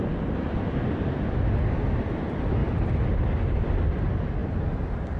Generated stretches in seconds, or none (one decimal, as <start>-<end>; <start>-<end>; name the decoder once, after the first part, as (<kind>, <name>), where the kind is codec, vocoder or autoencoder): none